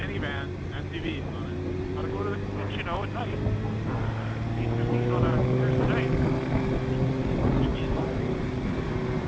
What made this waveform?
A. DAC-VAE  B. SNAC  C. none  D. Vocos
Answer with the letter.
C